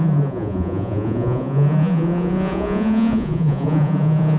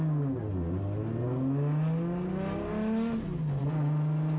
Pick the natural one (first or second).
second